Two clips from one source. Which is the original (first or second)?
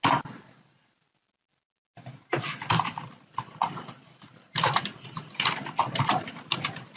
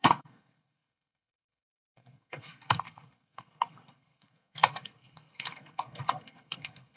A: first